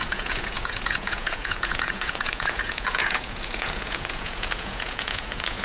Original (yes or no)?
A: no